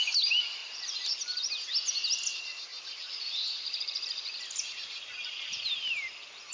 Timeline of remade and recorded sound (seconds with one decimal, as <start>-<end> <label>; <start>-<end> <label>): 0.0-0.6 recorded; 0.6-1.5 remade; 1.5-2.7 recorded; 2.7-5.7 remade; 5.7-6.5 recorded